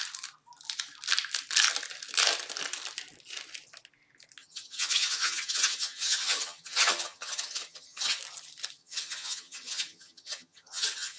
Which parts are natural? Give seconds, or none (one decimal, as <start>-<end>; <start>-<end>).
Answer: 0.0-4.4; 8.2-8.8